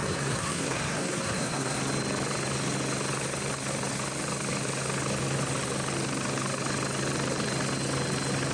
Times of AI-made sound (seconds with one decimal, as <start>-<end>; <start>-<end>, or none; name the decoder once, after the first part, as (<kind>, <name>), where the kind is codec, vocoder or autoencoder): 0.0-1.8 (codec, SNAC)